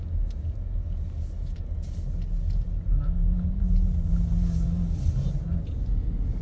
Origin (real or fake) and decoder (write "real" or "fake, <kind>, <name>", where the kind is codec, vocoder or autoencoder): real